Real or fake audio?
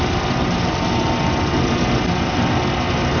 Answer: real